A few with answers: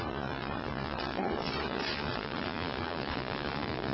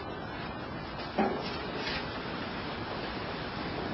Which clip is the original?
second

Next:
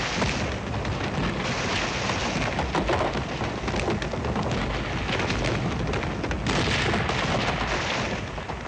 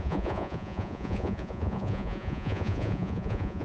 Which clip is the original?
first